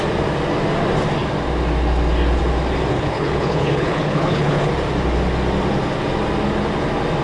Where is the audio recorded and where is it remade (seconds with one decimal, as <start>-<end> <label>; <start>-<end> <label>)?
0.0-2.9 recorded; 2.9-4.7 remade; 4.7-7.2 recorded